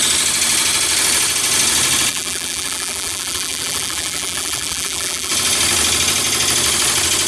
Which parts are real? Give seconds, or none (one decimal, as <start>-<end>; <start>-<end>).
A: 0.0-2.1; 5.3-7.3

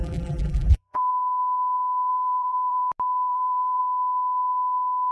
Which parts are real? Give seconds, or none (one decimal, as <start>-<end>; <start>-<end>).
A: 1.1-2.1; 2.8-3.3; 3.8-5.1

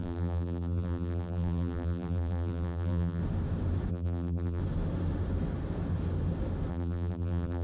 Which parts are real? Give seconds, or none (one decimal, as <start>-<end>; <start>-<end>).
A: 3.2-3.9; 4.6-6.7